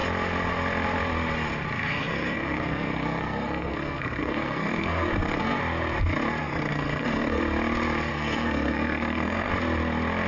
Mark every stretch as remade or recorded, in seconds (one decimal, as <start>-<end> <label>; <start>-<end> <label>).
0.0-1.8 recorded; 1.8-5.6 remade; 5.6-6.4 recorded; 6.4-7.4 remade; 7.4-8.1 recorded; 8.1-9.5 remade; 9.5-10.3 recorded